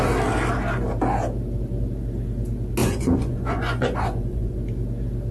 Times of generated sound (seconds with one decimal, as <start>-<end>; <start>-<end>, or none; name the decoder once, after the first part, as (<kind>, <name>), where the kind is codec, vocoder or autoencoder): 2.8-4.5 (vocoder, Vocos)